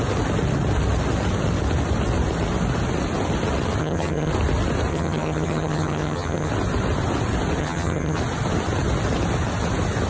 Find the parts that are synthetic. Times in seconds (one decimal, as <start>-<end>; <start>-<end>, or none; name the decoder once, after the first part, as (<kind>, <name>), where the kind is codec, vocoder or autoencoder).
3.8-4.3 (vocoder, HiFi-GAN); 4.9-6.5; 7.6-8.2